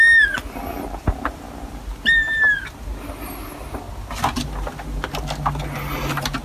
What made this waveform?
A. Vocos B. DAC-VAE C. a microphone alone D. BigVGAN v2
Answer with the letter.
C